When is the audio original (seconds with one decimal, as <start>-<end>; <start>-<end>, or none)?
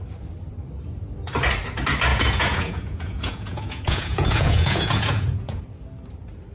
0.0-2.1; 5.6-6.5